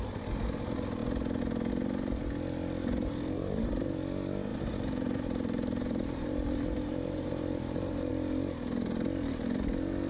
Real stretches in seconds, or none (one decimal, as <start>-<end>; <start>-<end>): 0.0-2.8; 3.9-4.5; 8.1-10.1